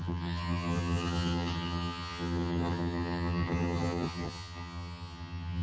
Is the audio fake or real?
fake